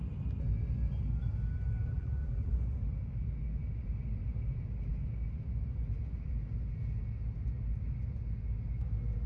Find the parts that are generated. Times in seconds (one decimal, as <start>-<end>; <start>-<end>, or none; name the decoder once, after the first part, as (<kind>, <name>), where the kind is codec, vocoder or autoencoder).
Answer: 1.8-2.5 (vocoder, BigVGAN v2)